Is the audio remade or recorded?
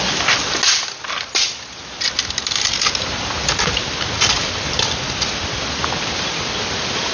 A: recorded